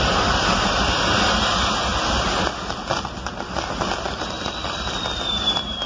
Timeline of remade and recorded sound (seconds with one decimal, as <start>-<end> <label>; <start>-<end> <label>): 0.0-5.9 recorded